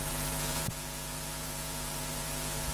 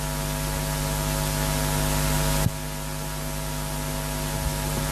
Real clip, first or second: second